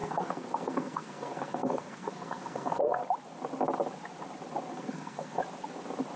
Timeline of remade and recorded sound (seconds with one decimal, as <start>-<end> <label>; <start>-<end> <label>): 0.0-3.0 remade; 3.0-4.7 recorded; 4.7-5.4 remade; 5.4-6.2 recorded